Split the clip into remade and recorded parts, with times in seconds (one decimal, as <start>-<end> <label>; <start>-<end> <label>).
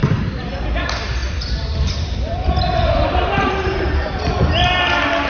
0.0-1.2 recorded; 1.2-4.4 remade; 4.4-5.3 recorded